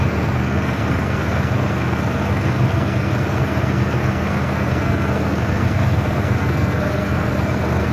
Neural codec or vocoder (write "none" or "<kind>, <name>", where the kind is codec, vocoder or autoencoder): codec, SNAC